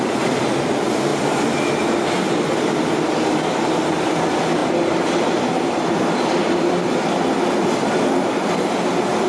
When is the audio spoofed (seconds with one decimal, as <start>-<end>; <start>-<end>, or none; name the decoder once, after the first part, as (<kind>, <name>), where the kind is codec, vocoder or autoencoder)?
0.0-9.3 (vocoder, BigVGAN v2)